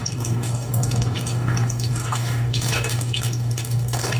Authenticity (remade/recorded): remade